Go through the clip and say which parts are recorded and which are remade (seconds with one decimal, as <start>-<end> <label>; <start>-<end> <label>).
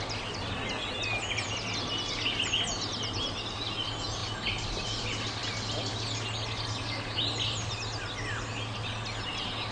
0.0-9.7 recorded